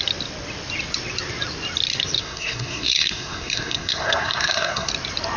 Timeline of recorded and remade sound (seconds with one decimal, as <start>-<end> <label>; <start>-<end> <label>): 0.0-2.2 recorded; 2.2-4.9 remade; 4.9-5.4 recorded